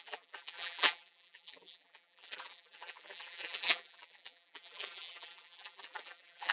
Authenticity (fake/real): fake